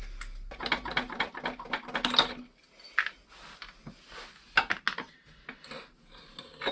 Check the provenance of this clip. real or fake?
real